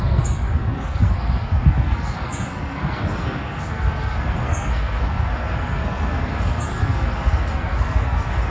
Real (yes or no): no